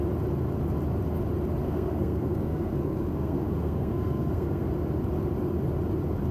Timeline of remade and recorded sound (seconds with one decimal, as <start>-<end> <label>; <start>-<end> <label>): 0.0-1.6 recorded; 1.6-4.7 remade; 4.7-6.3 recorded